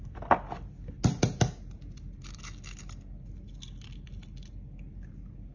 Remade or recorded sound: recorded